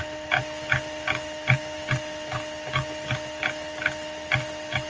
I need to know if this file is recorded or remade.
recorded